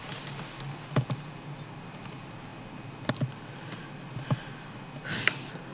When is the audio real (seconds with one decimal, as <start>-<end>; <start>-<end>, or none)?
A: 0.0-5.7